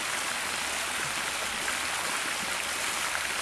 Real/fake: real